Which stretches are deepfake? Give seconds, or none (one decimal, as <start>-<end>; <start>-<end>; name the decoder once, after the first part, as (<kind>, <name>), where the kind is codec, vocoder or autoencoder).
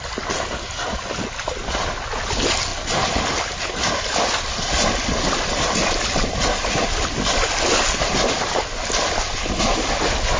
none